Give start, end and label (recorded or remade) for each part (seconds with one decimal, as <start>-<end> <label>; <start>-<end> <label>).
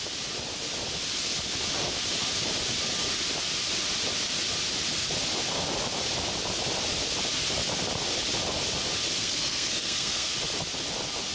0.0-9.2 recorded; 9.2-10.3 remade; 10.3-11.3 recorded